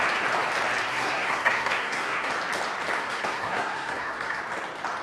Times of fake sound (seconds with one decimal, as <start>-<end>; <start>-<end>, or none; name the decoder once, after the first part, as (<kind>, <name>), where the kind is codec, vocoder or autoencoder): 0.9-2.3 (codec, SNAC); 3.0-4.4